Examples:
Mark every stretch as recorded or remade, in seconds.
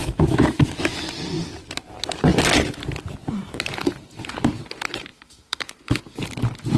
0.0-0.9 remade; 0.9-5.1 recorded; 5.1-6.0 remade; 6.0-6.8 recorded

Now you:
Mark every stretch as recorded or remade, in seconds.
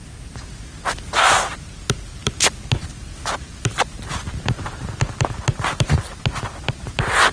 0.0-7.3 recorded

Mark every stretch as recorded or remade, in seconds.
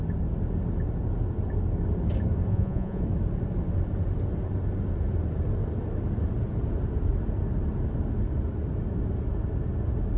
0.0-2.5 recorded; 2.5-3.0 remade; 3.0-10.2 recorded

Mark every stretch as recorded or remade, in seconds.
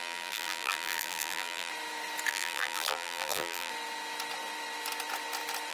0.0-1.7 remade; 1.7-2.3 recorded; 2.3-3.7 remade; 3.7-5.7 recorded